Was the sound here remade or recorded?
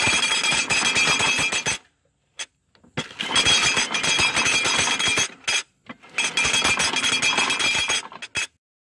recorded